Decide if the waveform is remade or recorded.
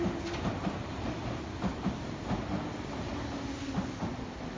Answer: recorded